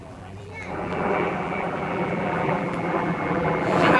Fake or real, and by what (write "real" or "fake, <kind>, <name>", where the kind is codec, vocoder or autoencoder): fake, vocoder, BigVGAN v2